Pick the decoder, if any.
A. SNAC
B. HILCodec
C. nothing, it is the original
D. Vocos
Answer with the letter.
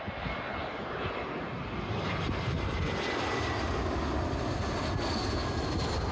C